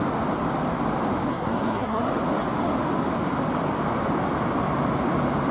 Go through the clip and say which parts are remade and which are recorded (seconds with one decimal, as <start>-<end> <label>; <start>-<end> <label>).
0.0-1.3 recorded; 1.3-2.1 remade; 2.1-5.5 recorded

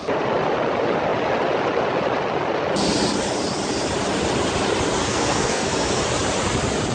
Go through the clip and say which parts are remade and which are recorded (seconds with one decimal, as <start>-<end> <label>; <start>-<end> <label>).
0.0-5.0 recorded; 5.0-5.9 remade; 5.9-6.9 recorded

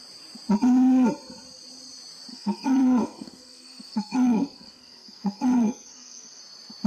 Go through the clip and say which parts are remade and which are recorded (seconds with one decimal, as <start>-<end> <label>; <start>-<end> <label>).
0.0-2.3 recorded; 2.3-6.4 remade; 6.4-6.9 recorded

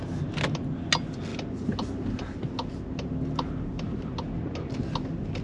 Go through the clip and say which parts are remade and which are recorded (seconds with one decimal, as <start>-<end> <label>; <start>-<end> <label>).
0.0-5.4 recorded

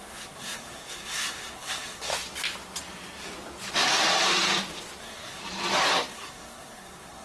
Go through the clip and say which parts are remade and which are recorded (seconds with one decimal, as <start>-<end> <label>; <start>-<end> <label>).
0.0-2.1 remade; 2.1-5.0 recorded; 5.0-5.4 remade; 5.4-6.1 recorded; 6.1-7.2 remade

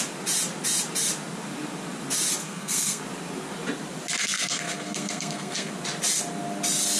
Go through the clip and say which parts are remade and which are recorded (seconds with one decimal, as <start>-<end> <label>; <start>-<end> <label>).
0.0-2.4 recorded; 2.4-3.0 remade; 3.0-4.2 recorded; 4.2-5.7 remade; 5.7-7.0 recorded